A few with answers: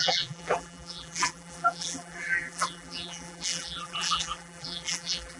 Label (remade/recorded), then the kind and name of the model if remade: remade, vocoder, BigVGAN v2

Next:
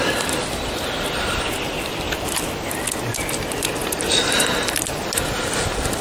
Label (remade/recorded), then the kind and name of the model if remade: recorded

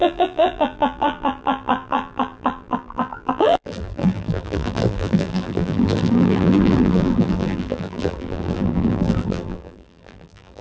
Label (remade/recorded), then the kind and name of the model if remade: remade, vocoder, BigVGAN v2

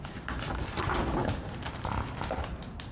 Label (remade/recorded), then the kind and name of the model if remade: recorded